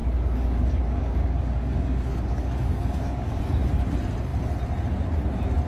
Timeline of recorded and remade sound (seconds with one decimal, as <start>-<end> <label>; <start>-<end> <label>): 0.0-3.4 remade; 3.4-5.7 recorded